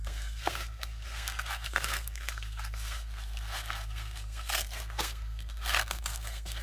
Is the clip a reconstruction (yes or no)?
yes